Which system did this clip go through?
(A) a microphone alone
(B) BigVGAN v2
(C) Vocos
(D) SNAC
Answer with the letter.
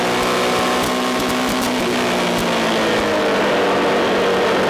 A